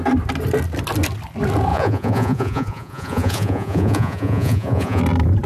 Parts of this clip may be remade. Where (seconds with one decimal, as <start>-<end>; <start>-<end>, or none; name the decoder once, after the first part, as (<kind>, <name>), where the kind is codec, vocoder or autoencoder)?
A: 1.7-5.0 (vocoder, Vocos)